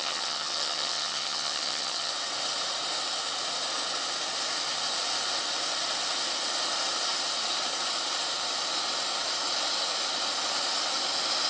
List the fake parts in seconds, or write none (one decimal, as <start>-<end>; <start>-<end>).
0.0-2.1